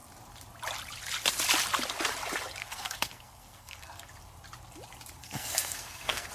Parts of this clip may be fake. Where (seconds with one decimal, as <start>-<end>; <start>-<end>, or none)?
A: 2.6-4.1; 5.2-6.3